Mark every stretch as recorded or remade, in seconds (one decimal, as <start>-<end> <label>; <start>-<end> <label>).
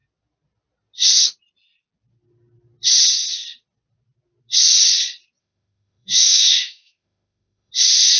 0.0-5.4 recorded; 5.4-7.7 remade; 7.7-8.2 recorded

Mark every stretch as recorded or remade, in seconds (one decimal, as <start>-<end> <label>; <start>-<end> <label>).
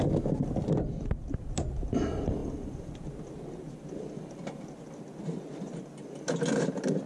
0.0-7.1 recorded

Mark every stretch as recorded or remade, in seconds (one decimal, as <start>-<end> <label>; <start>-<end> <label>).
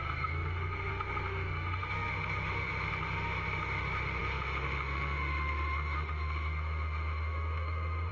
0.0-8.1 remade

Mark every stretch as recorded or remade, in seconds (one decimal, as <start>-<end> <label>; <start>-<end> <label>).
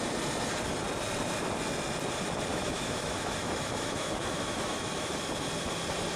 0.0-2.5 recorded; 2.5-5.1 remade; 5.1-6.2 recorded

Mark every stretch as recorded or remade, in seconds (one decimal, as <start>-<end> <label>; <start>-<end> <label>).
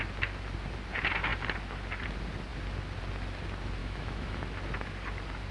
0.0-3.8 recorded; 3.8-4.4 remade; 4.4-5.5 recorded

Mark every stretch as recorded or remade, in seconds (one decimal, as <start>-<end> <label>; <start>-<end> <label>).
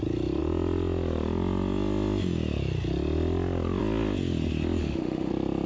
0.0-4.8 recorded; 4.8-5.3 remade; 5.3-5.7 recorded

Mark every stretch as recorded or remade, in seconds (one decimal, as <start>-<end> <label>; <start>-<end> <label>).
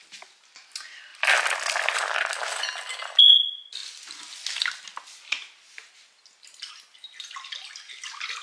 0.0-8.4 recorded